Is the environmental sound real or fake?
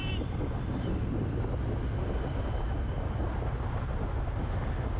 real